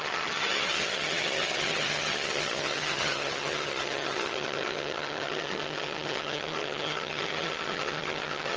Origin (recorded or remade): remade